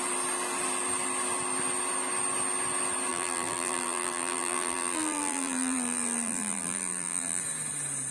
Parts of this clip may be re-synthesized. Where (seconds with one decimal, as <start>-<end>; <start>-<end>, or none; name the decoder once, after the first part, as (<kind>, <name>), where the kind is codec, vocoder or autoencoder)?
3.1-7.4 (vocoder, BigVGAN v2)